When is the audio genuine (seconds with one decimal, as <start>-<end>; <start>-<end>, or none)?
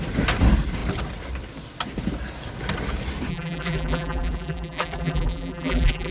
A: 0.0-3.3